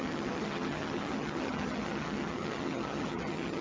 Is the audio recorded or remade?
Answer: remade